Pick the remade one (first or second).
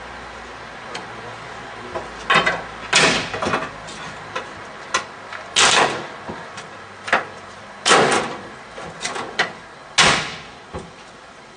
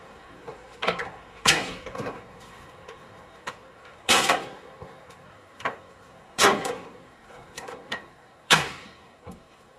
second